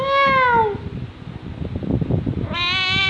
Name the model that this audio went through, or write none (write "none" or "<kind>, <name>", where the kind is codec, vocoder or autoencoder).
none